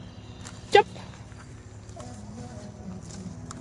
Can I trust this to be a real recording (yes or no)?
yes